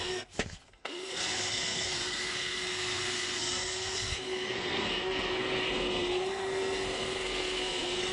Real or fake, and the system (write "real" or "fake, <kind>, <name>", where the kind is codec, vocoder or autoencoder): fake, codec, SNAC